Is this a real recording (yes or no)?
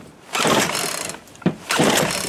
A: no